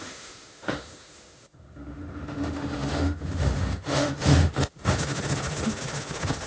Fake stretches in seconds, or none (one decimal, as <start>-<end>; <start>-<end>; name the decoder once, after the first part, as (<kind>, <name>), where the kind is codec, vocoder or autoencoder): 0.0-6.5 (autoencoder, DAC-VAE)